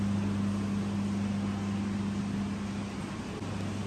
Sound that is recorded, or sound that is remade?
recorded